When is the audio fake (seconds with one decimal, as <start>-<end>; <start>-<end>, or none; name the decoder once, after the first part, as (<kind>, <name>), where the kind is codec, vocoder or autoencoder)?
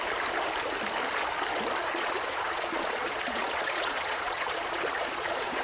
1.9-5.6 (vocoder, Vocos)